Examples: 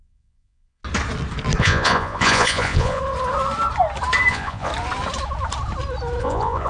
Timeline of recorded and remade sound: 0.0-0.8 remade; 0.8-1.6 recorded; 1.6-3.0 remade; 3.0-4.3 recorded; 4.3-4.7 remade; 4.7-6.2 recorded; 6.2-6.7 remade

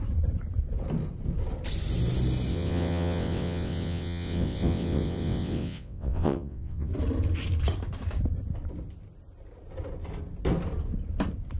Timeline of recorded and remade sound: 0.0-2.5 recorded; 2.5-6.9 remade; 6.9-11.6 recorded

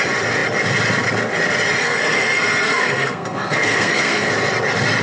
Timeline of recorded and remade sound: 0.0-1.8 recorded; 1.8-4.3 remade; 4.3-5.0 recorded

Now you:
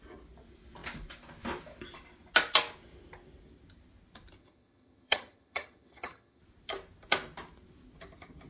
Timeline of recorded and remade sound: 0.0-4.4 recorded; 4.4-6.4 remade; 6.4-8.5 recorded